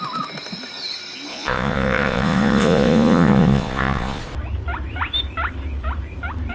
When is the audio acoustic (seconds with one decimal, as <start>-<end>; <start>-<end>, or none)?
0.0-1.3; 4.2-6.5